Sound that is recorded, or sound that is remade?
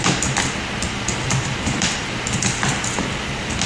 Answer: recorded